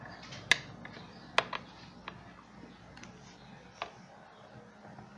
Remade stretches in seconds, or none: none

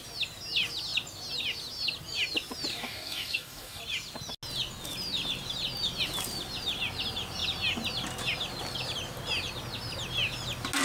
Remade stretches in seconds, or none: 2.7-3.8 (codec, DAC)

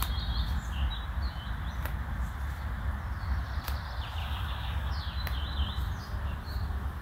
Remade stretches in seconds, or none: 4.2-4.9 (codec, DAC)

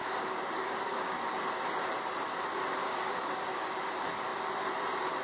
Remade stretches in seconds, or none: 0.0-1.4 (codec, DAC); 2.8-3.9

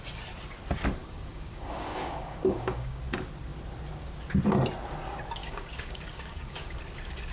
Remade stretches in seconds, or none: 1.0-3.0 (codec, DAC); 5.4-6.8